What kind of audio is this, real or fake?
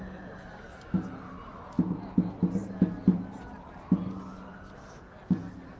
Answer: real